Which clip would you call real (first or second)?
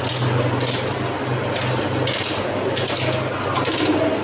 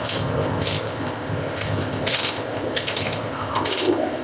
first